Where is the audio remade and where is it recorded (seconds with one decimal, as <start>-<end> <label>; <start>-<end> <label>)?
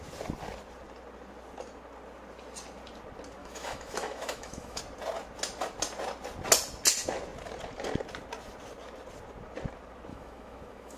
0.0-3.4 recorded; 3.4-4.8 remade; 4.8-10.1 recorded; 10.1-11.0 remade